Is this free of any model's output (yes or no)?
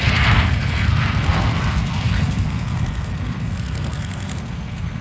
no